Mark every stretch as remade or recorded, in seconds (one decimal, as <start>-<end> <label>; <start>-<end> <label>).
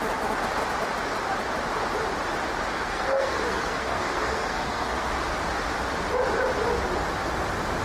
0.0-2.7 recorded; 2.7-5.1 remade; 5.1-7.8 recorded